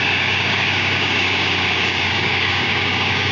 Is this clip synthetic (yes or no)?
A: yes